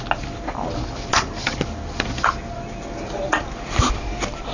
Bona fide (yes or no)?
yes